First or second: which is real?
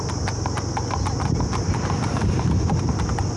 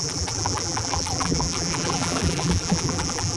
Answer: first